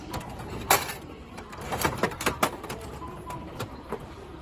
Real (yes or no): no